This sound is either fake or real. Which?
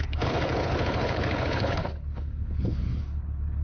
fake